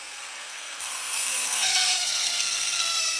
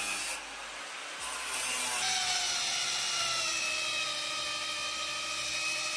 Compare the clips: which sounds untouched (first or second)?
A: second